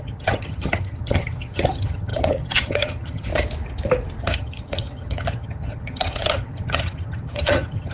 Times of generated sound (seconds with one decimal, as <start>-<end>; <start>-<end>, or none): 0.0-3.3; 4.2-7.9